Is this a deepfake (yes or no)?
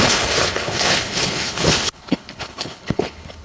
yes